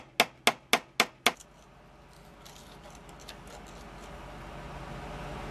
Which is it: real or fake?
real